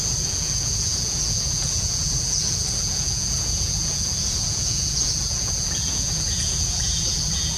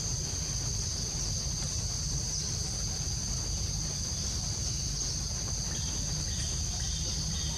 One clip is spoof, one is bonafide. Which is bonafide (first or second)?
second